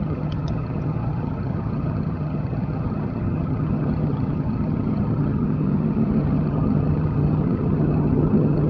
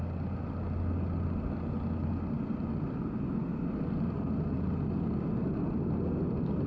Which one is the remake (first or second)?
first